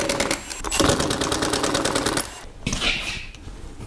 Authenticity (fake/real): real